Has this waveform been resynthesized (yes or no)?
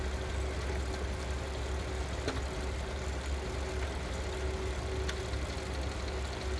no